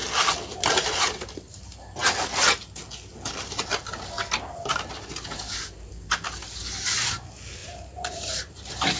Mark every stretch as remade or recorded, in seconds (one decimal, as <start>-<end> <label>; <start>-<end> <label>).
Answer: 0.0-7.6 recorded; 7.6-8.4 remade; 8.4-9.0 recorded

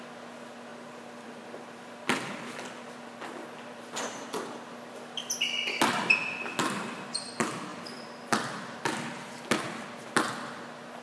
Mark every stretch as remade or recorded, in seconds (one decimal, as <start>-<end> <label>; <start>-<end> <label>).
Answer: 0.0-0.7 recorded; 0.7-4.1 remade; 4.1-7.7 recorded; 7.7-8.8 remade; 8.8-11.0 recorded

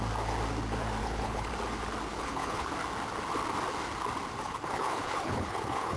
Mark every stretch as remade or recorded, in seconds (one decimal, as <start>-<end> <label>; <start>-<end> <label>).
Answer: 0.0-1.0 recorded; 1.0-1.5 remade; 1.5-2.1 recorded; 2.1-2.7 remade; 2.7-4.4 recorded; 4.4-6.0 remade

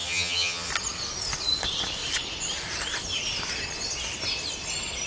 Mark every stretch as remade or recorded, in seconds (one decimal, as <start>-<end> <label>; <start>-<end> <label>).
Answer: 0.0-0.7 remade; 0.7-5.1 recorded

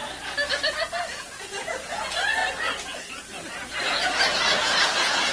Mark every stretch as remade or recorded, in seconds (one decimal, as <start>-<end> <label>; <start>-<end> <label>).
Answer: 0.0-0.5 recorded; 0.5-2.4 remade; 2.4-3.8 recorded; 3.8-5.3 remade

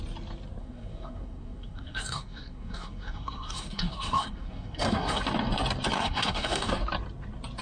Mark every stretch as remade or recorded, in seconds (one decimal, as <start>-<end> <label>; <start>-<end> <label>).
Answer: 0.0-0.6 recorded; 0.6-5.2 remade; 5.2-6.0 recorded; 6.0-6.7 remade; 6.7-7.6 recorded

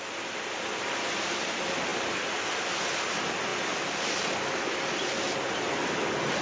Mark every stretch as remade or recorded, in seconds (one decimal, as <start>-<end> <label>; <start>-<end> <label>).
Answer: 0.0-6.4 recorded

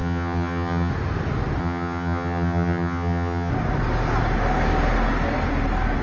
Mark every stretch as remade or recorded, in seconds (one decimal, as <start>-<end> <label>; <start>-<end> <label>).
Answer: 0.0-0.9 remade; 0.9-1.6 recorded; 1.6-3.5 remade; 3.5-6.0 recorded